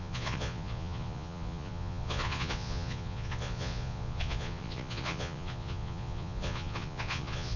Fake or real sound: fake